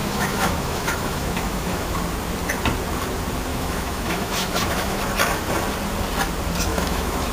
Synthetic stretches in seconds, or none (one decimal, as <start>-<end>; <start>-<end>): 0.0-2.0; 3.5-5.0; 6.7-7.3